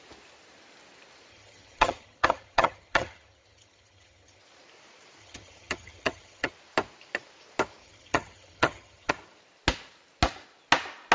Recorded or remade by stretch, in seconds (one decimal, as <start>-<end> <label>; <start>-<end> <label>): 0.0-1.3 recorded; 1.3-4.4 remade; 4.4-5.2 recorded; 5.2-6.5 remade; 6.5-7.8 recorded; 7.8-9.1 remade; 9.1-11.1 recorded